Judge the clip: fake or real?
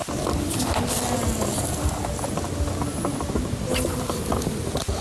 real